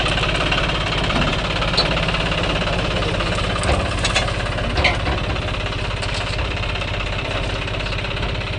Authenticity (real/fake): real